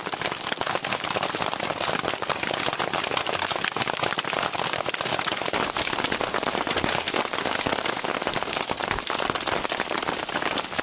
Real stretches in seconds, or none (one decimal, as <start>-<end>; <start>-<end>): 0.0-10.8